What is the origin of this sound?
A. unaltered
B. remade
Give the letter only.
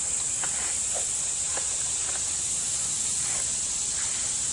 A